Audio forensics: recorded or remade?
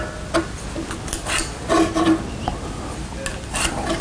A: recorded